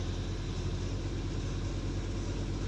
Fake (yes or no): no